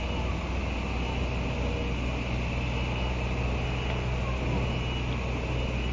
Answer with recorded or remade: recorded